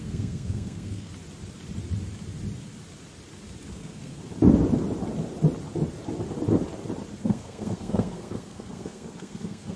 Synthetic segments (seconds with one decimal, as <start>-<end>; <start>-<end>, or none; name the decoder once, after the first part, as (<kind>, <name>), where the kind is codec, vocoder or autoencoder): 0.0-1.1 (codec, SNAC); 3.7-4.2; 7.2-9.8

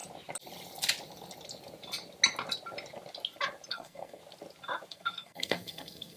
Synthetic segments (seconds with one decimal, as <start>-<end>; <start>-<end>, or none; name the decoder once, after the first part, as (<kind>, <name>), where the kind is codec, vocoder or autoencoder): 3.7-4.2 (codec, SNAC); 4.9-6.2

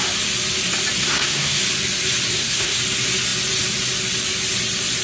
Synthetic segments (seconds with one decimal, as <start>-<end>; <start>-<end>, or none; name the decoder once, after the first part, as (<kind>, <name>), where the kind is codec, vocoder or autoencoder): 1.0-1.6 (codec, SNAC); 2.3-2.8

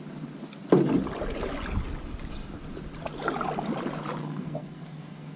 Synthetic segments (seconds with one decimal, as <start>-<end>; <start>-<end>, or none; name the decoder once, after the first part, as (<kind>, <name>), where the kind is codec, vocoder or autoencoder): 4.2-5.4 (codec, SNAC)

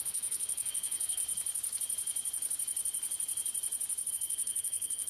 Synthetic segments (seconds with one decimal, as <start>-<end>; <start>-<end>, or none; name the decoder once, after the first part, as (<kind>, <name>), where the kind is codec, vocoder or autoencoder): 0.0-1.2 (codec, SNAC); 4.1-5.1